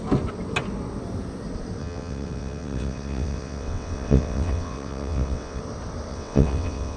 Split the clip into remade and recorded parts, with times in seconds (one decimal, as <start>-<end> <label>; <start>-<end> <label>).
0.0-1.8 recorded; 1.8-5.6 remade; 5.6-6.1 recorded; 6.1-7.0 remade